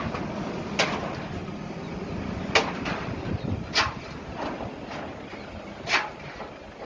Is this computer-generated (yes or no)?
no